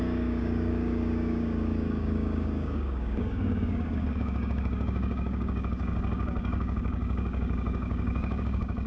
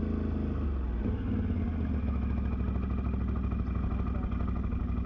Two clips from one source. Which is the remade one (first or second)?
first